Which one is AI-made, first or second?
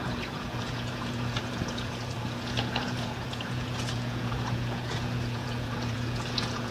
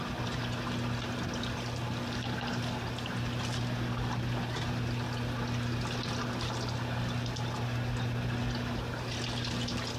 first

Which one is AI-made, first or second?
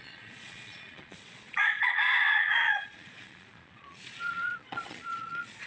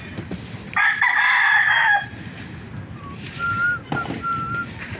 first